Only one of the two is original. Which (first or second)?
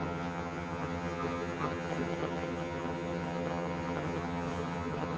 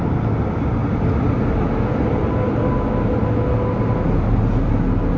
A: second